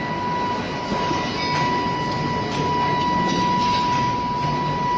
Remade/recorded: recorded